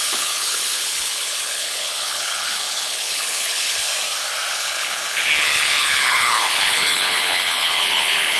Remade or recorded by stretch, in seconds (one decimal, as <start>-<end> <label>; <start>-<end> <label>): 0.0-3.9 remade; 3.9-4.5 recorded; 4.5-8.4 remade

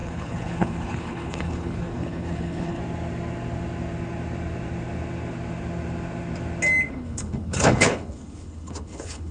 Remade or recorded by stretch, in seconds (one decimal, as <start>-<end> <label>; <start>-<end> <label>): 0.0-2.8 remade; 2.8-6.9 recorded; 6.9-9.3 remade